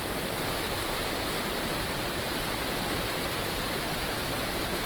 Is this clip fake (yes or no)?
yes